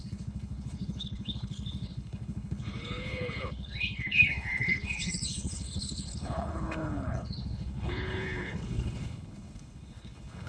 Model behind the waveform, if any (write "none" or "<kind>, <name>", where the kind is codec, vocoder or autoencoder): codec, HILCodec